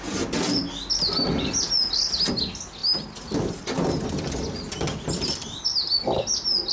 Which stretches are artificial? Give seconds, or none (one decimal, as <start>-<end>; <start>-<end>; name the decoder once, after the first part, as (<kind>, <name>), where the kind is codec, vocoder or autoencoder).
none